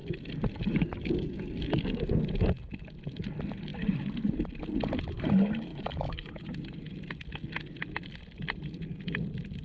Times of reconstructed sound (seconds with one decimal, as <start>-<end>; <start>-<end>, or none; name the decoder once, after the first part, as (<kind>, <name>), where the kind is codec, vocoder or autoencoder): 5.7-6.3 (autoencoder, DAC-VAE)